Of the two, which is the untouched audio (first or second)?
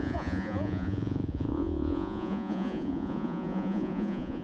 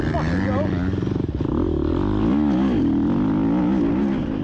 second